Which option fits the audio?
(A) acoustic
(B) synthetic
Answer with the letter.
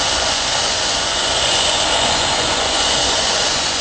B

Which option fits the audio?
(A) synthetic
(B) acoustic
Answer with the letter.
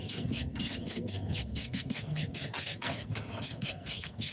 A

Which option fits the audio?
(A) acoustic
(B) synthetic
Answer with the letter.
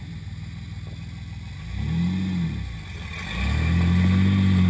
A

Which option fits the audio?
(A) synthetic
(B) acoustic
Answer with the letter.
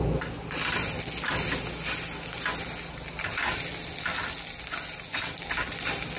B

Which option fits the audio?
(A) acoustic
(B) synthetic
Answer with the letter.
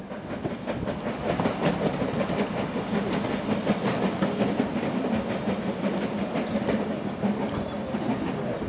A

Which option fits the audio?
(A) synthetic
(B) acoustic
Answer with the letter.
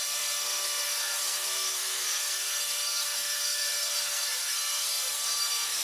A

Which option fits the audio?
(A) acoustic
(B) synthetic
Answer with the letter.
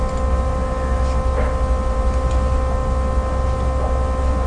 A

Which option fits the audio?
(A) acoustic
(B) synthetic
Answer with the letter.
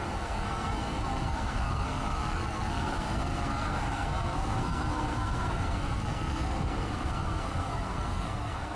B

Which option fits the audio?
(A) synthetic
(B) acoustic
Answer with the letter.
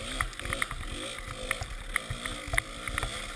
B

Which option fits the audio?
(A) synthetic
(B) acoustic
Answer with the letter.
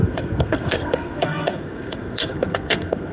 A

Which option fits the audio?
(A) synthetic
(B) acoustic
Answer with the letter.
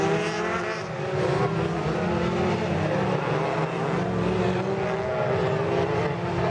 B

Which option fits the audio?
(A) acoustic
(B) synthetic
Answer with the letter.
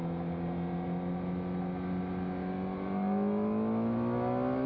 A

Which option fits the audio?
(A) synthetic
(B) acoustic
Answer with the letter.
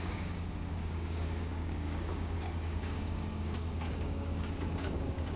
A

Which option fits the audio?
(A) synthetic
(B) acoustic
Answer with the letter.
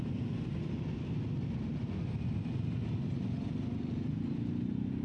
B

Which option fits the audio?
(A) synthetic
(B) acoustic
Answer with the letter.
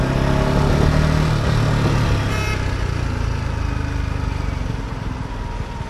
B